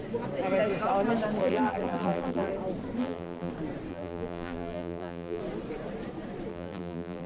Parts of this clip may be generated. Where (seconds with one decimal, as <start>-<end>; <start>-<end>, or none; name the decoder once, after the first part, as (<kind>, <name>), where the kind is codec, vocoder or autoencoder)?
1.4-2.5 (vocoder, BigVGAN v2); 3.0-3.5; 3.9-5.4; 6.5-7.3